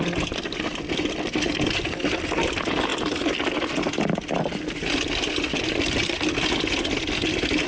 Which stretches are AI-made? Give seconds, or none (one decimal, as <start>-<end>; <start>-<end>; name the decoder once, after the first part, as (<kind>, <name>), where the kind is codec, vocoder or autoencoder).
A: none